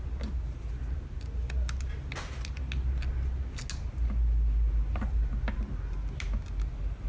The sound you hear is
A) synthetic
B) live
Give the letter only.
B